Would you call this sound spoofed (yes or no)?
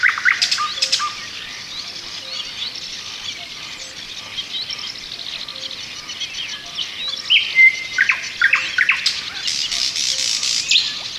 no